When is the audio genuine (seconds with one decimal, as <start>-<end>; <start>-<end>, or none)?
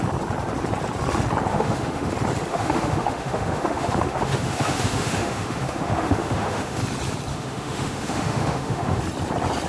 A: 0.0-1.5; 2.1-2.5; 6.8-7.3; 9.0-9.7